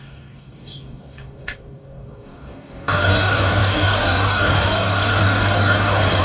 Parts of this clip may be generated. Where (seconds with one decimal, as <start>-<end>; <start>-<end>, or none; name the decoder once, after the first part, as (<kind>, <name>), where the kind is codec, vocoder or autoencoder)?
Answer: 0.0-6.2 (codec, DAC)